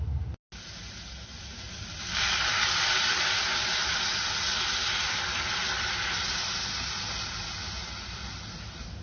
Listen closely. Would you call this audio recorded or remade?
recorded